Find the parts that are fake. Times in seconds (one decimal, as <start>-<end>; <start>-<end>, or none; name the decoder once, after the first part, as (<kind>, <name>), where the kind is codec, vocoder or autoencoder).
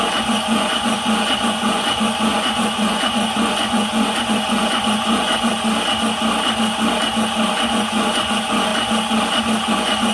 0.0-5.5 (vocoder, Vocos); 7.5-8.7; 9.7-10.1